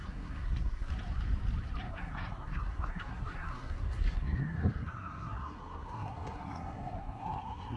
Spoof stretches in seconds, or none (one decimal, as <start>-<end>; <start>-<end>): 0.0-0.9; 1.9-7.8